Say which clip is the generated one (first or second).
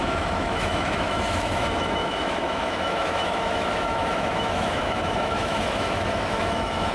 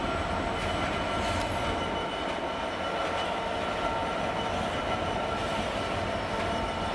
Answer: first